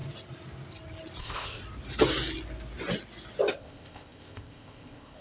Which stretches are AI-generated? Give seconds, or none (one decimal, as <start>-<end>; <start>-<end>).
1.2-1.6; 3.5-5.2